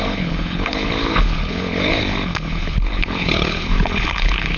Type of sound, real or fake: fake